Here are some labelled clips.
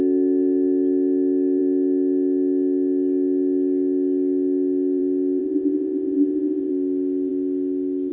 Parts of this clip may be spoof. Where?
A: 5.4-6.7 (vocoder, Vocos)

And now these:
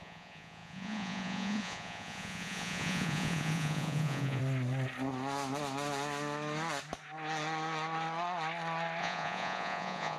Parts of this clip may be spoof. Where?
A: 0.0-4.4 (vocoder, Vocos); 9.0-10.2

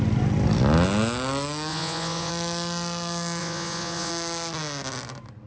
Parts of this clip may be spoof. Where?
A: 1.7-2.3 (vocoder, Vocos); 3.4-4.1

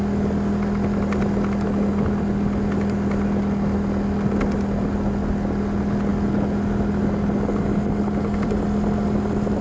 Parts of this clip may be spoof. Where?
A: none

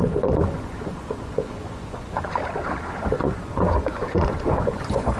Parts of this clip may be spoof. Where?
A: 0.0-2.4 (vocoder, Vocos); 2.9-5.2